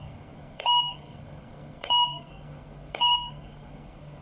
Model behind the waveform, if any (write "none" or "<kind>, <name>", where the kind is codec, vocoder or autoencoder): codec, SNAC